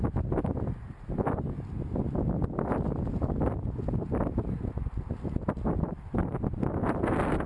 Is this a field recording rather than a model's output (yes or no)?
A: yes